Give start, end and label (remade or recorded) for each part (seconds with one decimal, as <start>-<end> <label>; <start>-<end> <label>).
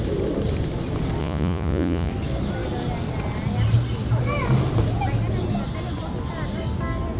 0.0-1.2 recorded; 1.2-2.1 remade; 2.1-7.2 recorded